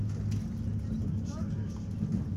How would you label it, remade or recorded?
recorded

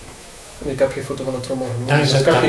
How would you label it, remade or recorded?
remade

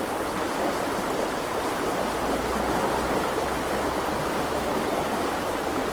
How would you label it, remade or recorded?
recorded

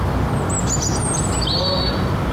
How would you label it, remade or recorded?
recorded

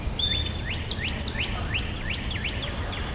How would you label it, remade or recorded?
recorded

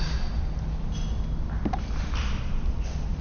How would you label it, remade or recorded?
recorded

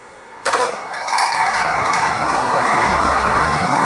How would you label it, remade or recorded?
remade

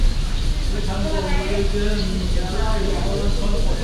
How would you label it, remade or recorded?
recorded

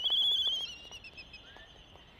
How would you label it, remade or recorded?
recorded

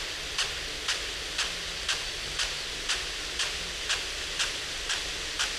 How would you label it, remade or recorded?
recorded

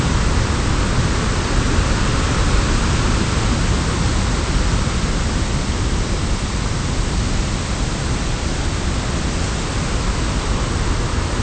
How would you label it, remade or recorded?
recorded